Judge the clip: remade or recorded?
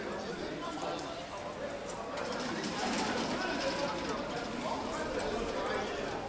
recorded